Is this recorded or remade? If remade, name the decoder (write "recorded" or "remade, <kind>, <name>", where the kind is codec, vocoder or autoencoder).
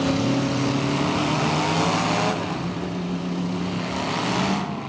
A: recorded